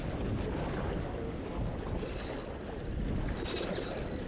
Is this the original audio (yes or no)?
yes